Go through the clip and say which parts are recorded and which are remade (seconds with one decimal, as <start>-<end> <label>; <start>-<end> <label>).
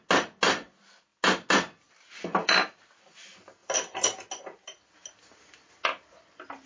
0.0-6.7 recorded